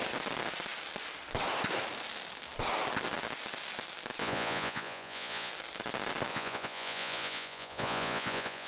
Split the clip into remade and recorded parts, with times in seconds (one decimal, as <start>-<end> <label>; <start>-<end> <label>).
0.0-4.2 recorded; 4.2-5.5 remade; 5.5-6.3 recorded; 6.3-8.7 remade